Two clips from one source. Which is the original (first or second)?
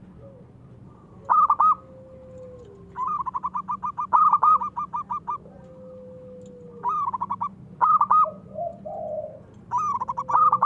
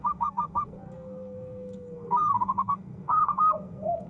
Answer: first